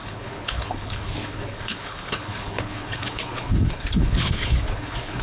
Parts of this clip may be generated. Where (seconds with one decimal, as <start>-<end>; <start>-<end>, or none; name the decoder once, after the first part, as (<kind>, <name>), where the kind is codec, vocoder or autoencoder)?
0.0-5.2 (codec, HILCodec)